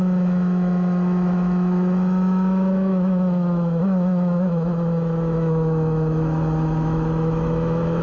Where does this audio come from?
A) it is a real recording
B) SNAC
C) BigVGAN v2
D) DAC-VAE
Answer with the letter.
D